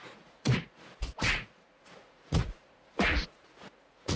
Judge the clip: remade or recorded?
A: remade